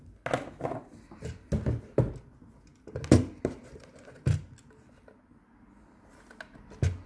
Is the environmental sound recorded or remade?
recorded